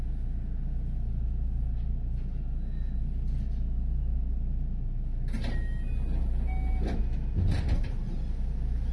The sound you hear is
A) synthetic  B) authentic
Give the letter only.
B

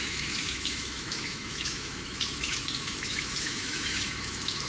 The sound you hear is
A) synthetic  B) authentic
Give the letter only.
A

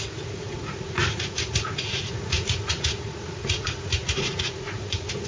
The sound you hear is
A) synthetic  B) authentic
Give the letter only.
A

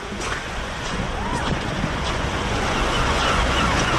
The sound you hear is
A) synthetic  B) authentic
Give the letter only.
A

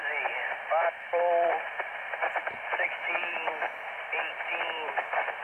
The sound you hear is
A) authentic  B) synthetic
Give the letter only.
B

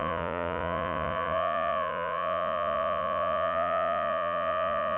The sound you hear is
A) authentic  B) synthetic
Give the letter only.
B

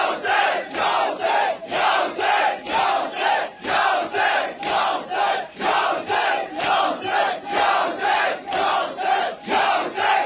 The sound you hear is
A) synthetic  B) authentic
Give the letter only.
A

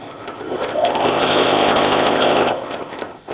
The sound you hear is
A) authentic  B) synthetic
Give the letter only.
B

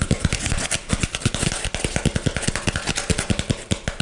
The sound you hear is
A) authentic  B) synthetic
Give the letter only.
A